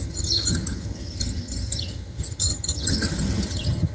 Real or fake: fake